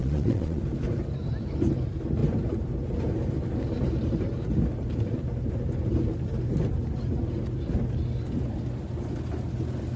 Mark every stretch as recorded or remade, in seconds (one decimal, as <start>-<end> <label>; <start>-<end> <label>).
0.0-0.6 remade; 0.6-10.0 recorded